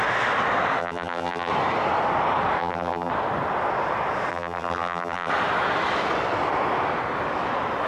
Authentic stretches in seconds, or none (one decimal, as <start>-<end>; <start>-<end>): 0.0-0.8; 1.5-2.6; 3.1-4.3; 5.3-7.9